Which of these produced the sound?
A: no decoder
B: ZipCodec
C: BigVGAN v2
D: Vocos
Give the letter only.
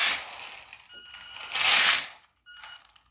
A